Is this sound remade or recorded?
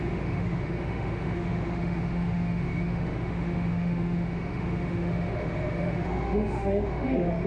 remade